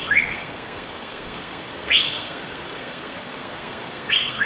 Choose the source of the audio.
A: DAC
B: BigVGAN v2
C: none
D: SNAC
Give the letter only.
D